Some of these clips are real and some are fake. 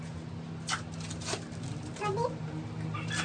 real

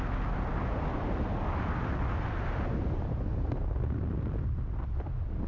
real